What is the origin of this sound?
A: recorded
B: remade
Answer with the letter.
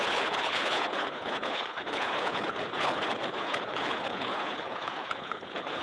B